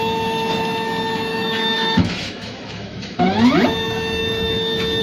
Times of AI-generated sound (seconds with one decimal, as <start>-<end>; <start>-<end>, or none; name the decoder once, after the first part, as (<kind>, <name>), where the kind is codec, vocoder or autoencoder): 1.3-3.2 (autoencoder, DAC-VAE); 4.2-5.0